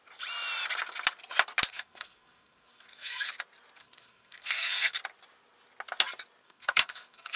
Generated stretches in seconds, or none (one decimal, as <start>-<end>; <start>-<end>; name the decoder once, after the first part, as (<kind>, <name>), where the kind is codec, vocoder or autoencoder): 1.7-3.3 (codec, SNAC); 3.8-5.0; 6.4-7.4